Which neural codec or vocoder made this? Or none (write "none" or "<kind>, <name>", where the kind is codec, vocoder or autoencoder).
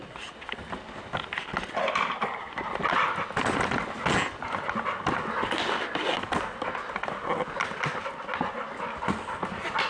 none